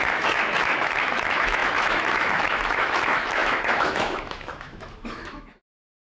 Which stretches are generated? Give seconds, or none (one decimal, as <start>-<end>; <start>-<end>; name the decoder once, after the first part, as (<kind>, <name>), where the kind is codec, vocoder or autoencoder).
0.0-6.2 (autoencoder, DAC-VAE)